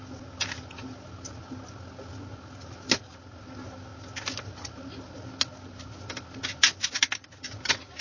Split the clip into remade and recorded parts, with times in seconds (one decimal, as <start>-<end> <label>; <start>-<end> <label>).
0.0-8.0 recorded